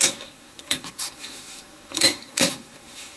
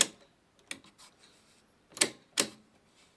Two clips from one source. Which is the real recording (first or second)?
second